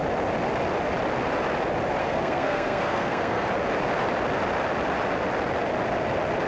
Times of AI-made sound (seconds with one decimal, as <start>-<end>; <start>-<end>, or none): 2.0-3.5